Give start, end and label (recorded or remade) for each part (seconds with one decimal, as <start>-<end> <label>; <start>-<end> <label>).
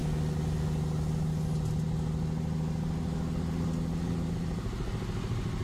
0.0-5.6 recorded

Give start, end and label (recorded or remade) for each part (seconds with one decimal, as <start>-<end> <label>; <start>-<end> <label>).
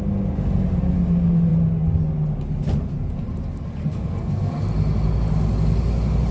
0.0-3.8 recorded; 3.8-4.5 remade; 4.5-6.3 recorded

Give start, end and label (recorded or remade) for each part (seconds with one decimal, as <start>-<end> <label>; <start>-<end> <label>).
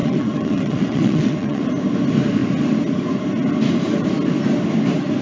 0.0-1.6 remade; 1.6-5.2 recorded